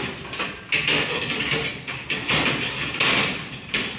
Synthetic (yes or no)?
no